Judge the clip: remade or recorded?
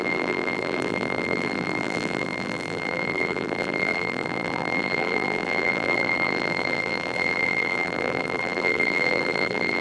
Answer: remade